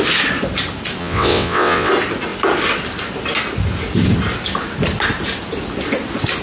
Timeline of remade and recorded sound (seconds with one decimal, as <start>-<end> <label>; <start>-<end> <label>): 0.0-1.0 recorded; 1.0-1.9 remade; 1.9-6.4 recorded